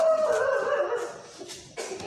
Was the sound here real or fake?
real